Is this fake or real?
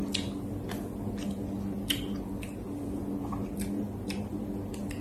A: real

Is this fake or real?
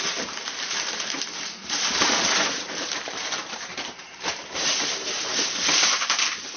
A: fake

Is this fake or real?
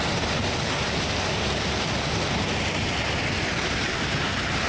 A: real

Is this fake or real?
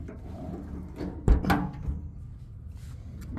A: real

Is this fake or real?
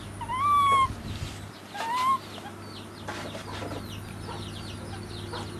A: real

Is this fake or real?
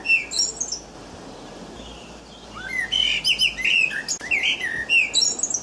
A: real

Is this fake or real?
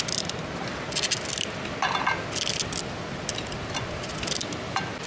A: real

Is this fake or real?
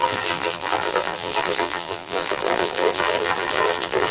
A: fake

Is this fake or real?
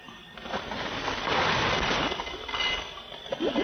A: real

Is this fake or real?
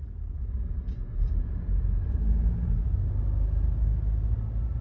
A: real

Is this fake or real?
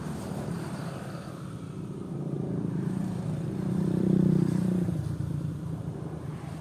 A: fake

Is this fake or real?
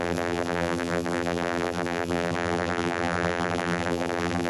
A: fake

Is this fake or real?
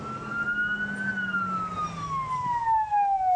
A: real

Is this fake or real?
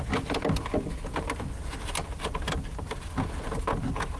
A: real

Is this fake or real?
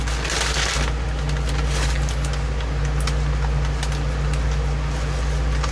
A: real